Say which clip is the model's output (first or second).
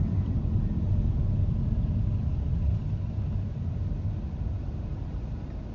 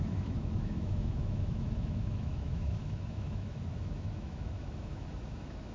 second